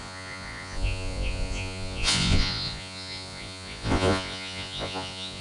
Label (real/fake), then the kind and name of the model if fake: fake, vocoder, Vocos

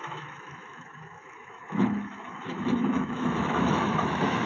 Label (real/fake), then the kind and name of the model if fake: fake, autoencoder, DAC-VAE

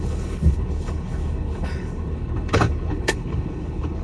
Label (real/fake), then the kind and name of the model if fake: fake, codec, HILCodec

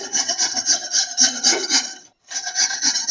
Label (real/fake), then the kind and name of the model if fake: fake, vocoder, HiFi-GAN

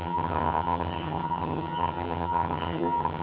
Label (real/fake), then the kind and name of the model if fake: fake, vocoder, HiFi-GAN